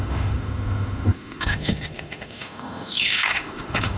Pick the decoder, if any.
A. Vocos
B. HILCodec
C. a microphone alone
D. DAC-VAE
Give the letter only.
D